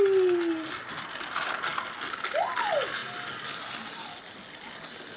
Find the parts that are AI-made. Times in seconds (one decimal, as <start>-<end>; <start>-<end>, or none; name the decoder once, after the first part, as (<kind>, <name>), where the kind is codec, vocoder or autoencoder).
none